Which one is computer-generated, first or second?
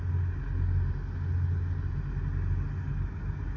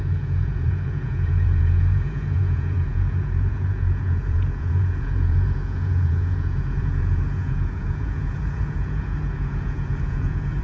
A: second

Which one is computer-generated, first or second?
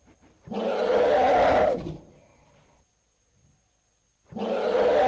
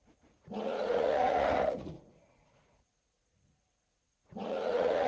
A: second